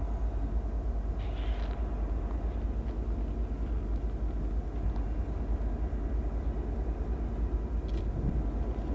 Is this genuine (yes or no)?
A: yes